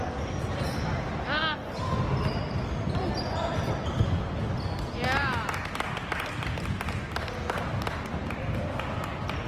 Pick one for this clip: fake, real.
real